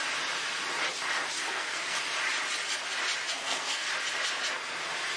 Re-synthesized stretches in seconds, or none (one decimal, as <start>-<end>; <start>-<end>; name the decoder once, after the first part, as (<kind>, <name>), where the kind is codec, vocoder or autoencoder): 1.4-2.0 (codec, SNAC); 3.4-3.9